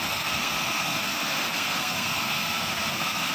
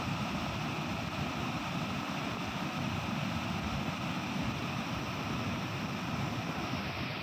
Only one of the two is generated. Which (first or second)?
first